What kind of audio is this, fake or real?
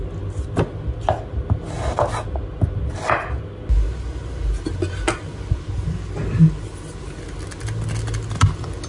real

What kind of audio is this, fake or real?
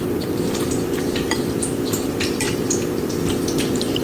fake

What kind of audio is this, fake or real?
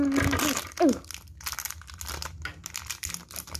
real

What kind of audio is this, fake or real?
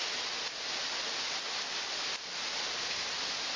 real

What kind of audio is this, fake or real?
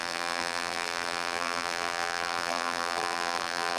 fake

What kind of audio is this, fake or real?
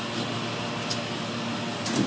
real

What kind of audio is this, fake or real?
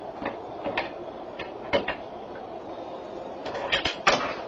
fake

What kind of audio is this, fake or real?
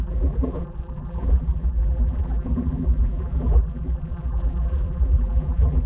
fake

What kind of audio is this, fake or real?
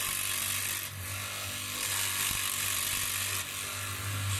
real